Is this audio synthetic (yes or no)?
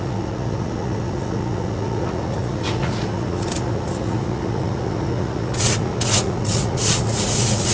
yes